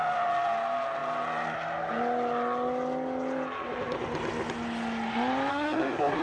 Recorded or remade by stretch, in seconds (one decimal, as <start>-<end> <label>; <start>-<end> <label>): 0.0-5.5 recorded; 5.5-6.2 remade